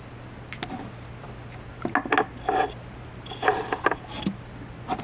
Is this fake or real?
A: real